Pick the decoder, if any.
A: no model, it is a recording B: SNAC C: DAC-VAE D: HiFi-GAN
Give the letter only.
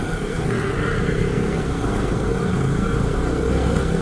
B